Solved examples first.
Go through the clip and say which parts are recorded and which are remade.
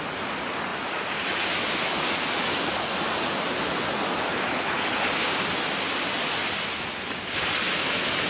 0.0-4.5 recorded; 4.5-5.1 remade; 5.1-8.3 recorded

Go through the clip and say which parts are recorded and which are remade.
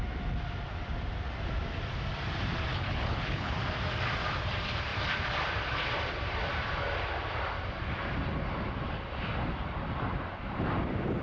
0.0-2.7 recorded; 2.7-3.5 remade; 3.5-11.2 recorded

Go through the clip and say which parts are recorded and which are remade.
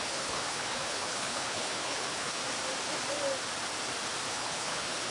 0.0-2.4 remade; 2.4-4.3 recorded; 4.3-5.1 remade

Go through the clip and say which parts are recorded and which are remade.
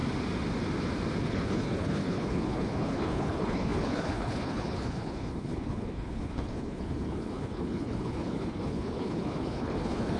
0.0-1.2 recorded; 1.2-10.2 remade